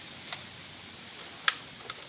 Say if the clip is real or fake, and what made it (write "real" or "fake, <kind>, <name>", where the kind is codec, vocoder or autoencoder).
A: real